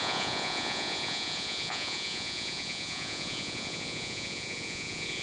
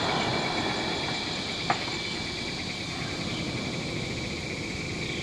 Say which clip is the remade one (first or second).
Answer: first